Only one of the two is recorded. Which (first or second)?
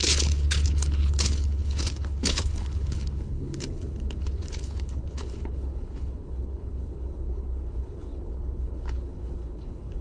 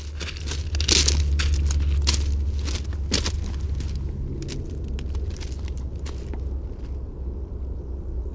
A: second